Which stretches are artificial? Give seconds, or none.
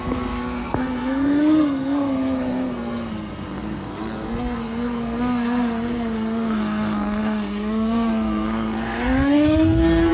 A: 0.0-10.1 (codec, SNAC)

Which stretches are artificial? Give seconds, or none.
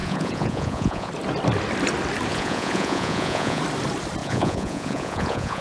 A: 0.0-1.1 (vocoder, Vocos); 2.3-3.6; 4.2-5.6